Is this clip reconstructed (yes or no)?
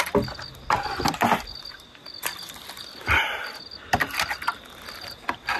no